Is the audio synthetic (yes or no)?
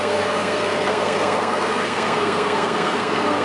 yes